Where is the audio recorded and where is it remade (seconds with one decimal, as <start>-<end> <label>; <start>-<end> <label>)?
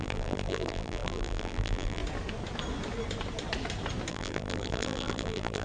0.0-2.0 remade; 2.0-4.1 recorded; 4.1-5.6 remade